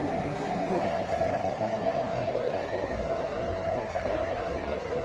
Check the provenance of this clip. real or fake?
fake